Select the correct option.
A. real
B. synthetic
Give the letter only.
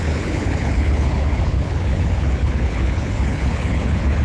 B